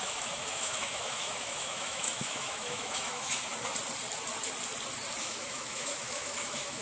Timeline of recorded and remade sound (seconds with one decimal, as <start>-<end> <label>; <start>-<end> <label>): 0.0-3.5 remade; 3.5-5.2 recorded; 5.2-6.8 remade